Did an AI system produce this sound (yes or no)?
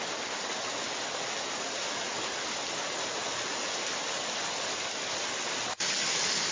no